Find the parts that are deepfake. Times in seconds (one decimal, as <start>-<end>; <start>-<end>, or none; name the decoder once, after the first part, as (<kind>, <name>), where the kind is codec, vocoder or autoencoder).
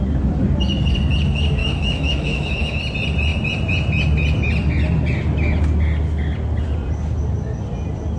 1.6-2.8 (autoencoder, DAC-VAE)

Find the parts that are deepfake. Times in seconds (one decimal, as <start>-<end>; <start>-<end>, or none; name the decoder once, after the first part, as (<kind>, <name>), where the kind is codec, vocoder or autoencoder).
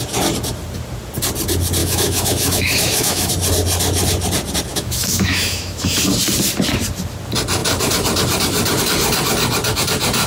1.8-3.3 (autoencoder, DAC-VAE); 4.7-6.0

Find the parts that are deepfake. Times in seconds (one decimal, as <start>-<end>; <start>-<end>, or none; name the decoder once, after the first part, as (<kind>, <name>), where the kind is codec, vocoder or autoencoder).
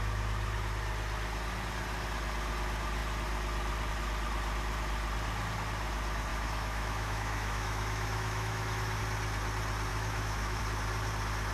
6.3-9.0 (autoencoder, DAC-VAE); 9.9-10.6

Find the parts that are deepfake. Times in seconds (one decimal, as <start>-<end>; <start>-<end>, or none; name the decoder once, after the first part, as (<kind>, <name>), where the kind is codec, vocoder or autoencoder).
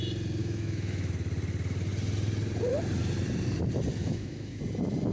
0.4-1.1 (autoencoder, DAC-VAE); 4.0-4.6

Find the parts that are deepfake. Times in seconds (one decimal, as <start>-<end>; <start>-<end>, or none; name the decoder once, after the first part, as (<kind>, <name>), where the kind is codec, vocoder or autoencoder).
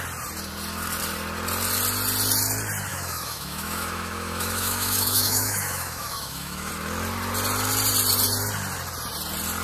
2.9-6.7 (autoencoder, DAC-VAE)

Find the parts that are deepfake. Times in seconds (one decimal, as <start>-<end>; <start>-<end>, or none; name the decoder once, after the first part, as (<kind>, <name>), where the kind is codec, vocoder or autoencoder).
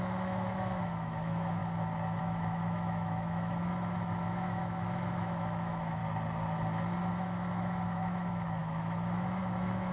0.0-1.6 (autoencoder, DAC-VAE); 2.2-6.0; 7.1-9.9